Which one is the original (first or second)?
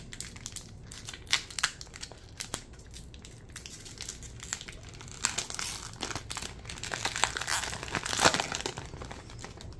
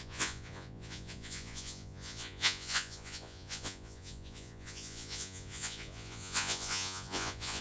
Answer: first